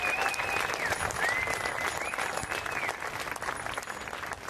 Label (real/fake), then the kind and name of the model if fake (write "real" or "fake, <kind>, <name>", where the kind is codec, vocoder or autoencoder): real